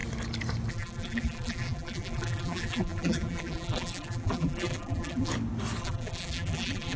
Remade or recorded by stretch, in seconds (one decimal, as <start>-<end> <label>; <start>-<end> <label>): 0.0-0.7 recorded; 0.7-5.3 remade; 5.3-5.8 recorded; 5.8-7.0 remade